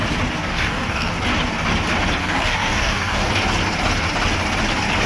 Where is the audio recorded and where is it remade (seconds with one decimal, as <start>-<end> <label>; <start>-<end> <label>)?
0.0-0.5 recorded; 0.5-1.1 remade; 1.1-2.2 recorded; 2.2-3.3 remade; 3.3-5.1 recorded